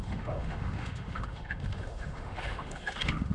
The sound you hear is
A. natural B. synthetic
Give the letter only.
B